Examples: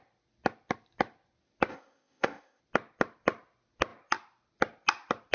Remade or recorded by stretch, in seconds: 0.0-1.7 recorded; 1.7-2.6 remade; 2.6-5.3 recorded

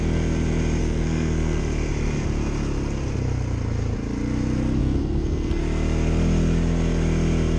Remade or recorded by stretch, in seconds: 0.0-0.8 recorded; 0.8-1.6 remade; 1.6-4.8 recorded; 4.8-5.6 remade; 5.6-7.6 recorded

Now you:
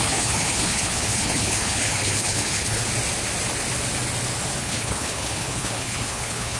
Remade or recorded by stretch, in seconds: 0.0-2.9 remade; 2.9-4.6 recorded; 4.6-6.6 remade

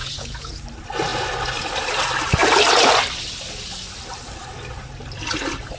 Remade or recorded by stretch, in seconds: 0.0-0.5 remade; 0.5-5.8 recorded